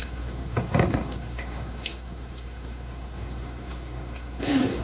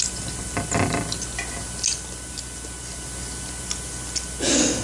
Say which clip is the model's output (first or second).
first